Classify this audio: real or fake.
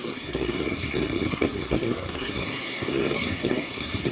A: fake